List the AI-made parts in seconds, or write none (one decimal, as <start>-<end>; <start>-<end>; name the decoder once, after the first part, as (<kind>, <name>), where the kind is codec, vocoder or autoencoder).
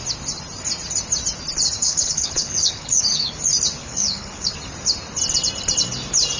1.8-3.3 (codec, HILCodec); 3.8-4.5